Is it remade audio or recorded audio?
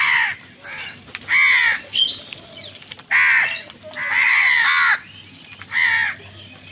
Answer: recorded